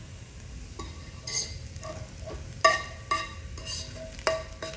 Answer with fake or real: real